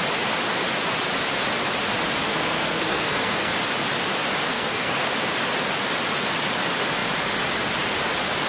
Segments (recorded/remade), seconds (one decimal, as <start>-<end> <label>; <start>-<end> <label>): 0.0-2.3 recorded; 2.3-3.5 remade; 3.5-4.5 recorded; 4.5-5.1 remade; 5.1-8.5 recorded